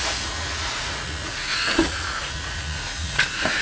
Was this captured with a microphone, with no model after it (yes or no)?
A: no